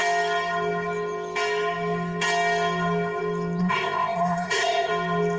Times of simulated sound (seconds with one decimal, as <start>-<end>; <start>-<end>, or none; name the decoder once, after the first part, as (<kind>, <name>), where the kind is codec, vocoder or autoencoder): 3.6-4.9 (codec, ZipCodec)